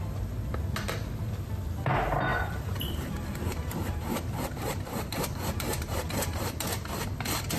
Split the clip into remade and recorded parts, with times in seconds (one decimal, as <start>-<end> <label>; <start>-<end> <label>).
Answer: 0.0-2.3 recorded; 2.3-6.9 remade; 6.9-7.6 recorded